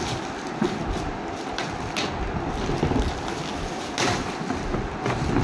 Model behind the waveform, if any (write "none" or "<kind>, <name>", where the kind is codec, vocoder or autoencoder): none